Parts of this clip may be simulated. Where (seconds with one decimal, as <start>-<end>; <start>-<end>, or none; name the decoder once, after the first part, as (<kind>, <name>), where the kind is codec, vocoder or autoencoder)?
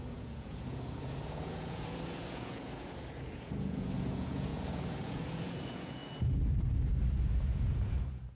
0.0-6.0 (vocoder, Vocos); 7.4-8.3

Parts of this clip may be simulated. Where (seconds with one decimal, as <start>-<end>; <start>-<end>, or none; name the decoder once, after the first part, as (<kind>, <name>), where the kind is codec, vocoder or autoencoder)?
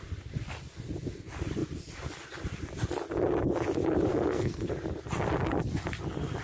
4.1-4.7 (codec, SNAC)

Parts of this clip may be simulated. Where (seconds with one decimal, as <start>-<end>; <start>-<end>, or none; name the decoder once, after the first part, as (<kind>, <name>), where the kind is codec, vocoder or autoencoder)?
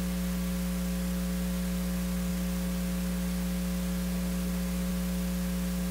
none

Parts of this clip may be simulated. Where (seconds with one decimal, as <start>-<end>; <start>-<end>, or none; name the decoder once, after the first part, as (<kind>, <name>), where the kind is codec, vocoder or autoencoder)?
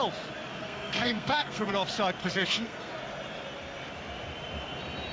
0.6-1.7 (codec, SNAC); 2.2-2.9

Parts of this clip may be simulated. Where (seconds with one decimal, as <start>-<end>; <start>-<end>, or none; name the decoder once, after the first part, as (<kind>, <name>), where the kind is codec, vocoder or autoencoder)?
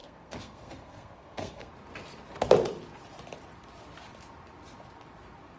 0.0-1.7 (codec, SNAC)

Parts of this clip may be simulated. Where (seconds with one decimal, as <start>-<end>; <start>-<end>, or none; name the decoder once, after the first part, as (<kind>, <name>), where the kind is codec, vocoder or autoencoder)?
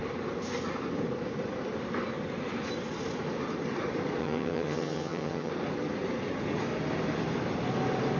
4.2-5.5 (vocoder, HiFi-GAN)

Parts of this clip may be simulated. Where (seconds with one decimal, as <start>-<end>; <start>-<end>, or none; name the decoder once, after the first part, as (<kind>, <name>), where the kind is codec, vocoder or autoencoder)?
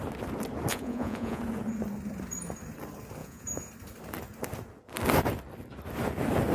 0.7-1.4 (vocoder, Vocos); 3.2-3.7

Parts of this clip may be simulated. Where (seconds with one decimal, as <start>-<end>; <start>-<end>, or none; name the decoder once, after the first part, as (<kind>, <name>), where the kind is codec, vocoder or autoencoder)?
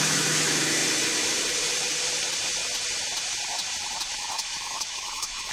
0.0-0.8 (autoencoder, DAC-VAE); 4.1-5.5